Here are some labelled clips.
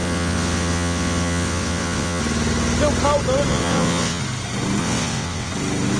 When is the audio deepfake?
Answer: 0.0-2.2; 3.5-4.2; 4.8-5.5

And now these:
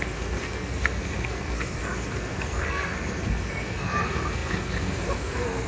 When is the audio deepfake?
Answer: 0.0-5.7

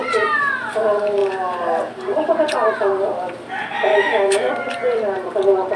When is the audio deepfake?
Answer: 3.9-4.5

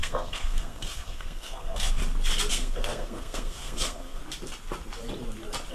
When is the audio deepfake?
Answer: 0.0-2.0; 2.5-4.2